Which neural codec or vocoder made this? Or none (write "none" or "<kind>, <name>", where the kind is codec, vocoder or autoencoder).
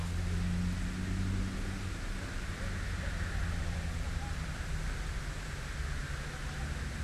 none